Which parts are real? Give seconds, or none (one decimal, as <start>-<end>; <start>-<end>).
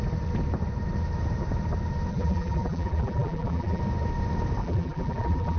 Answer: 0.0-2.1; 3.8-4.6